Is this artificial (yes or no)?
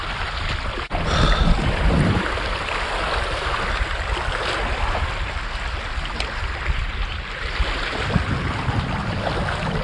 no